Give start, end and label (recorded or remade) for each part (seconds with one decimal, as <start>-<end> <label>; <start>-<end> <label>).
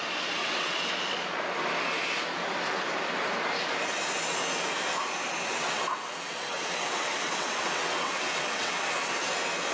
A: 0.0-0.4 recorded; 0.4-0.9 remade; 0.9-5.5 recorded; 5.5-8.8 remade; 8.8-9.7 recorded